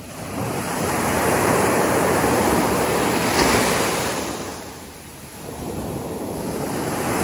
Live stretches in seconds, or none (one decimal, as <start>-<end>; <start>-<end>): none